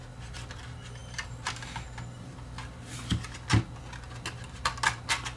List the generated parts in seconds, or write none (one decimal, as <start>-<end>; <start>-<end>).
none